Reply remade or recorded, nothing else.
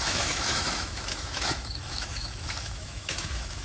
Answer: remade